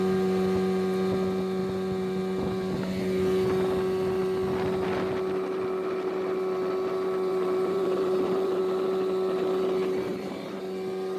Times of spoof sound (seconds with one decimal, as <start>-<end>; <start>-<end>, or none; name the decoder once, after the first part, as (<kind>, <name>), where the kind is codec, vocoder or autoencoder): 7.3-8.6 (vocoder, BigVGAN v2); 10.1-10.6